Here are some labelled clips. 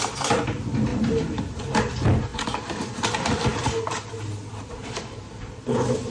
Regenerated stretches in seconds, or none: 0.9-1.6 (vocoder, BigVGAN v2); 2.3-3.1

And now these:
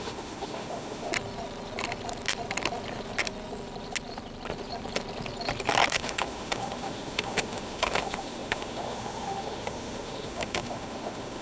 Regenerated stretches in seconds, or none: 0.0-1.1 (autoencoder, DAC-VAE); 5.9-11.4

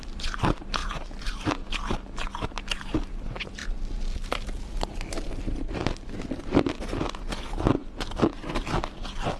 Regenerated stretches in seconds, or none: none

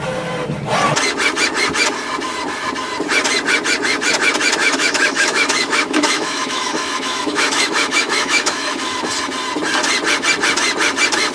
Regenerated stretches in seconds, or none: 4.6-9.1 (autoencoder, DAC-VAE)